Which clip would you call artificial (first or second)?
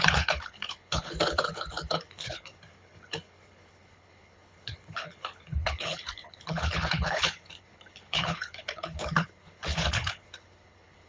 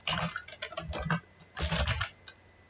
first